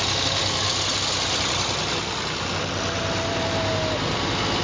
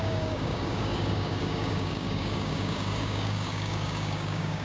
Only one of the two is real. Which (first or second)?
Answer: first